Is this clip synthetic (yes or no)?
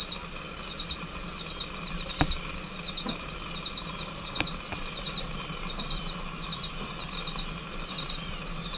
no